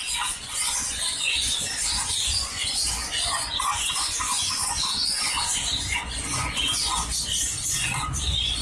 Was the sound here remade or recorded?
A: remade